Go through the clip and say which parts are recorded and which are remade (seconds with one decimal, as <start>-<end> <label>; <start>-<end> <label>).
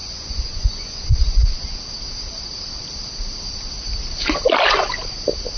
0.0-1.8 remade; 1.8-5.6 recorded